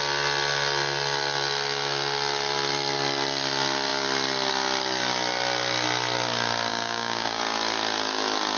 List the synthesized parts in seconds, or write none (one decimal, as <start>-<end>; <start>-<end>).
6.7-7.4